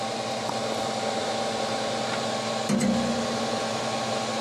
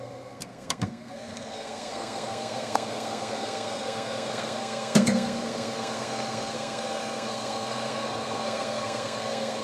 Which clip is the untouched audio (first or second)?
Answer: first